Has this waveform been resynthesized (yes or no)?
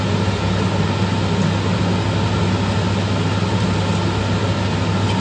no